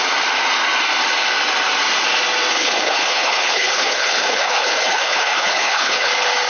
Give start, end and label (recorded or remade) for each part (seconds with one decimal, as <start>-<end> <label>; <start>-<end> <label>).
0.0-2.5 recorded; 2.5-6.1 remade; 6.1-6.5 recorded